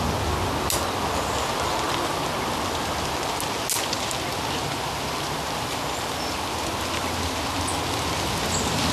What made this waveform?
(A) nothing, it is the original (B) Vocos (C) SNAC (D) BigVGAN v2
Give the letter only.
A